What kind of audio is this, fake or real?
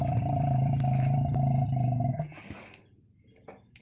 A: fake